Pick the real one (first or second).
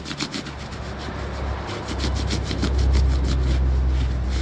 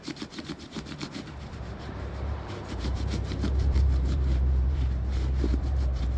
first